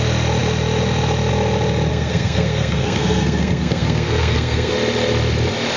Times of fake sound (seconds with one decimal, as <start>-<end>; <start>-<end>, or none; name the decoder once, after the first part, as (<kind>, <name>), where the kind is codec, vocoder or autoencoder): 1.9-4.7 (codec, SNAC)